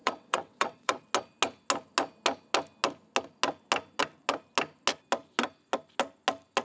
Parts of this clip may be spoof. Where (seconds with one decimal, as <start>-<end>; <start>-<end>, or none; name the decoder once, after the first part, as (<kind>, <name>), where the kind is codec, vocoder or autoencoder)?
0.0-1.0 (vocoder, WaveNeXt)